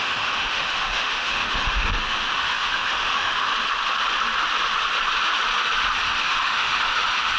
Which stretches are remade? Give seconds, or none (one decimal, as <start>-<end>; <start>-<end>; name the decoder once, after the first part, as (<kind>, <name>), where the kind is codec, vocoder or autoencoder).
0.0-3.5 (autoencoder, DAC-VAE); 6.2-7.4

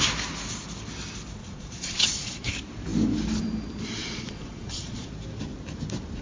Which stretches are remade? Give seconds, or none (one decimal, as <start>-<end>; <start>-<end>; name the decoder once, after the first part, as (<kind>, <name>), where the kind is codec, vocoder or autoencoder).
1.4-2.5 (vocoder, Vocos); 4.0-5.1

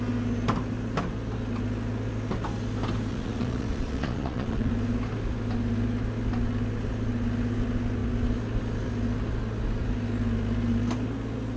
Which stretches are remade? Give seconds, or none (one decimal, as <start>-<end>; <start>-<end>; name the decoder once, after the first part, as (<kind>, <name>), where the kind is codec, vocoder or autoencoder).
3.1-4.7 (vocoder, Vocos)

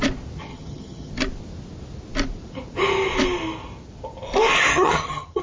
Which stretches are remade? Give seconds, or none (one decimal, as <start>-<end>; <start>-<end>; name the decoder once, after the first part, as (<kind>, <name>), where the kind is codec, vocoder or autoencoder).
0.5-1.1 (vocoder, HiFi-GAN); 4.7-5.4

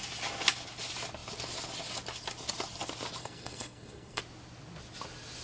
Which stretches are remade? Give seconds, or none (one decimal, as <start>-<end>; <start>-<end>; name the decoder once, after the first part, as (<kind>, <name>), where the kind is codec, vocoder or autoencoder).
3.2-4.2 (codec, SNAC)

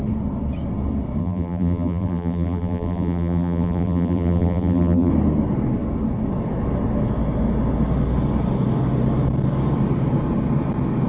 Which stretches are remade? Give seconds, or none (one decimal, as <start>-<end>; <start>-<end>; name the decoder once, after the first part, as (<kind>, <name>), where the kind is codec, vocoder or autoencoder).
1.2-5.1 (vocoder, BigVGAN v2)

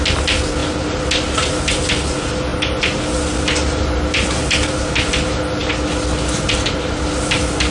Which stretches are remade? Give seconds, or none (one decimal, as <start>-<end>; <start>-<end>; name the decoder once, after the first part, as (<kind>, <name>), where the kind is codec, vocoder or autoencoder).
none

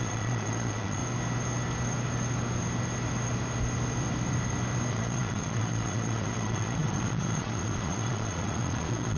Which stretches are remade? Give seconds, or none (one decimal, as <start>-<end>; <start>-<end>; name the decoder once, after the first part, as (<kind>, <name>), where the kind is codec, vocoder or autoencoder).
0.0-1.0 (vocoder, Vocos); 4.9-9.2